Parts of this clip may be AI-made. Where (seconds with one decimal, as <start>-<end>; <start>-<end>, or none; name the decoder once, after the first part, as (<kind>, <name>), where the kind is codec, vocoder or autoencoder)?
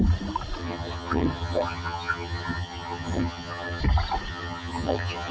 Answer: 0.6-3.8 (vocoder, HiFi-GAN); 4.3-5.3